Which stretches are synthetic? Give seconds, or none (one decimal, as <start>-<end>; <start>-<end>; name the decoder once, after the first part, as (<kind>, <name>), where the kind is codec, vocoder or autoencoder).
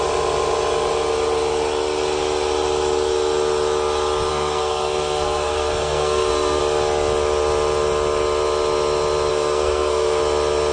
4.3-6.6 (codec, SNAC); 9.3-10.2